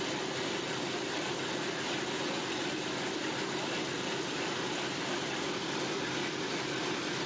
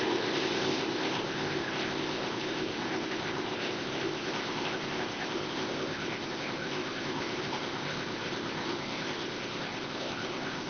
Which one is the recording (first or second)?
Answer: first